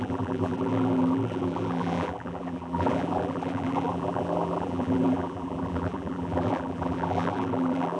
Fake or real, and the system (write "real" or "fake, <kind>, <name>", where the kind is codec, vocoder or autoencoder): fake, vocoder, BigVGAN v2